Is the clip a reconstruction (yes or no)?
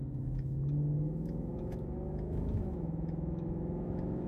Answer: yes